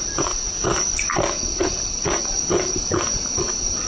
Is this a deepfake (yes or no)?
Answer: no